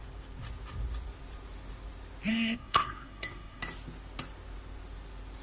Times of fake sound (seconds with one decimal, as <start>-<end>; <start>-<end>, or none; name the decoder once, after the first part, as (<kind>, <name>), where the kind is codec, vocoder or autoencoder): 2.3-3.6 (codec, SNAC)